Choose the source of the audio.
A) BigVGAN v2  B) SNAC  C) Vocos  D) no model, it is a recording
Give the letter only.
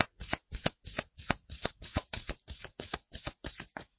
C